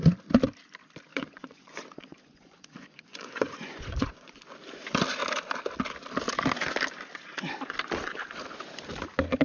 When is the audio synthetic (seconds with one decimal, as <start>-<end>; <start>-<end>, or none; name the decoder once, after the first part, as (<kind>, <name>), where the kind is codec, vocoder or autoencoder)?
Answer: 1.1-4.4 (vocoder, Vocos)